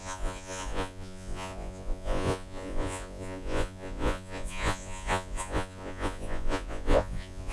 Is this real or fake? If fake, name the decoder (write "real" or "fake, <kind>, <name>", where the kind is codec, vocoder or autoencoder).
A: fake, vocoder, Vocos